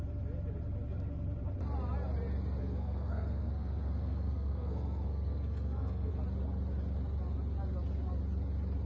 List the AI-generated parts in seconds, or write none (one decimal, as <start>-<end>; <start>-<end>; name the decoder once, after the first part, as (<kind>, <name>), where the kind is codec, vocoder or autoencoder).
2.6-6.1 (codec, SNAC)